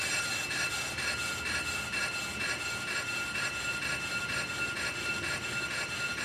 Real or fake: real